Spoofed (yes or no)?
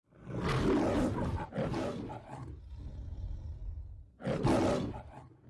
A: no